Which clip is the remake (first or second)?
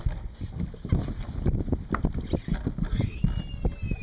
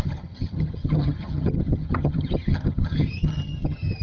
second